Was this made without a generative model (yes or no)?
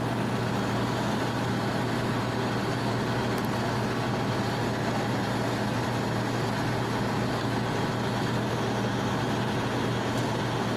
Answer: yes